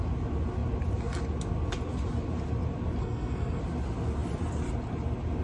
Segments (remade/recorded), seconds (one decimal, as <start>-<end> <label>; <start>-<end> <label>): 0.0-3.0 recorded; 3.0-3.6 remade; 3.6-5.4 recorded